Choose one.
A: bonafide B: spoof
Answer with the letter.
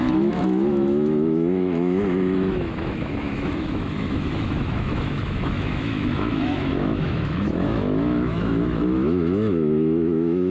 B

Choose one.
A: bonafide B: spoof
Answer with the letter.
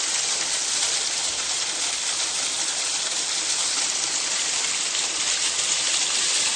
A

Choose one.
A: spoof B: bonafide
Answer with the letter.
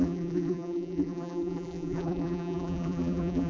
A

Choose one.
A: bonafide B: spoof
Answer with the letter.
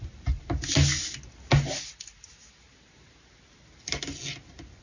A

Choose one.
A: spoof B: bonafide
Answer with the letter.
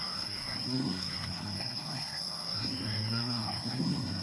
A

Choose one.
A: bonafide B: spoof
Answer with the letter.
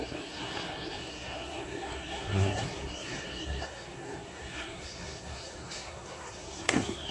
B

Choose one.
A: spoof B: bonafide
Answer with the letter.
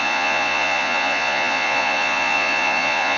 A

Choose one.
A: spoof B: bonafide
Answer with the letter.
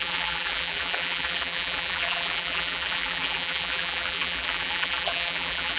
A